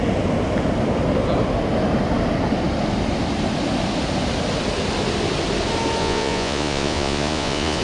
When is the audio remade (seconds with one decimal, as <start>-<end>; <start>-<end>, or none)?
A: 6.0-7.8